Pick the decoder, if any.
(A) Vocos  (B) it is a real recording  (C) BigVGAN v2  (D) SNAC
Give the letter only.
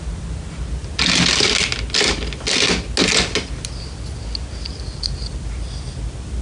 B